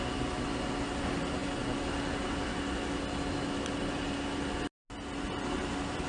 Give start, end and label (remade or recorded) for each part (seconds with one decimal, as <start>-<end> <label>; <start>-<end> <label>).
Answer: 0.0-6.1 recorded